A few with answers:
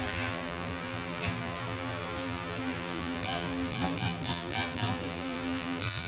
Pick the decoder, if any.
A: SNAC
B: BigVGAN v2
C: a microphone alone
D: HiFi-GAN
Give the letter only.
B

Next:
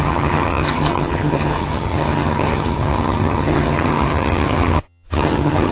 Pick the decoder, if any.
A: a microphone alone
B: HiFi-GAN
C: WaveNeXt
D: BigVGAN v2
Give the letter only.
B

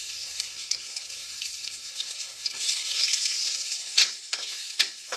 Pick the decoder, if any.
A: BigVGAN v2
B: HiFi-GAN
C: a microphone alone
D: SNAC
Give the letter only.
D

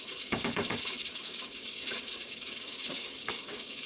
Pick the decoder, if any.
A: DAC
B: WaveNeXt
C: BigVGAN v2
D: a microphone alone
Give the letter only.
A